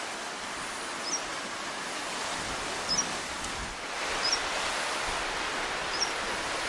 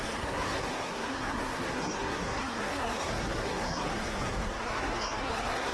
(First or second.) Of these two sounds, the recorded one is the first